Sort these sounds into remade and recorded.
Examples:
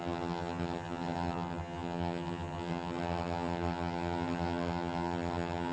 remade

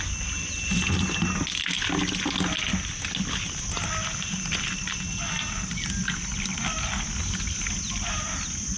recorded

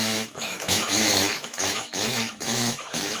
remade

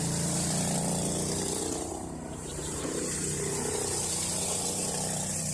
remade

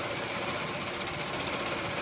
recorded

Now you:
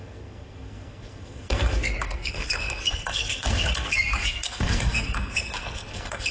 remade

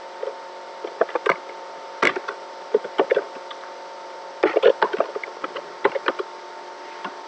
recorded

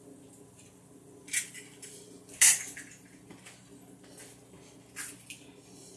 recorded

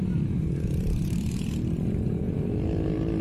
remade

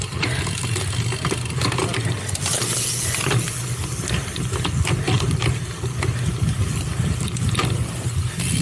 recorded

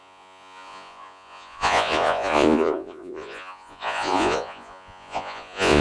remade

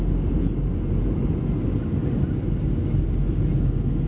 recorded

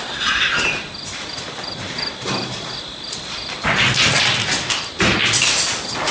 recorded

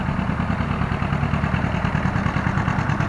recorded